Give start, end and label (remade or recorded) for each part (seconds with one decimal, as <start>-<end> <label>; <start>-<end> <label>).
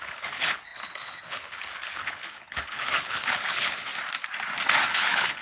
0.0-3.9 remade; 3.9-4.9 recorded; 4.9-5.4 remade